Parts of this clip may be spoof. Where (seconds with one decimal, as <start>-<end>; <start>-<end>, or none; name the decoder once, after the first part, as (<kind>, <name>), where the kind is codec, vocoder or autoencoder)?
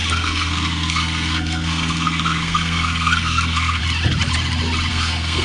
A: 0.0-3.8 (codec, SNAC); 4.9-5.4